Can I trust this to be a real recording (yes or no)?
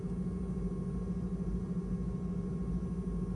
yes